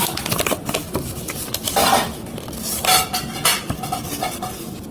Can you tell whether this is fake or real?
real